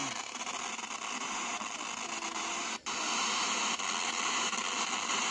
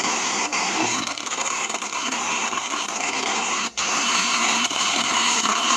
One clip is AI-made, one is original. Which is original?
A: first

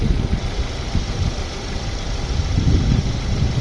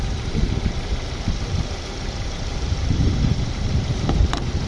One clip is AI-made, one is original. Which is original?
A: first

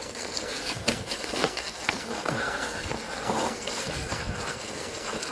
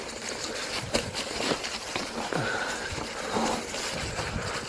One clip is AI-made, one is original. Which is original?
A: second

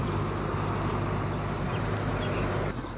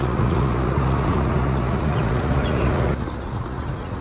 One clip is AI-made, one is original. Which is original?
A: first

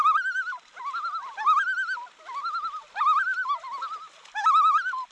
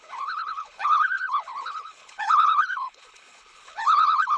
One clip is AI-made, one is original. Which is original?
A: first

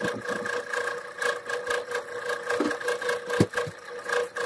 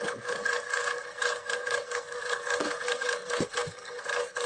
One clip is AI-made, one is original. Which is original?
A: first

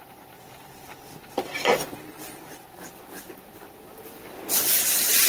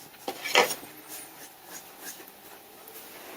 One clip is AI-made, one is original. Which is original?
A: second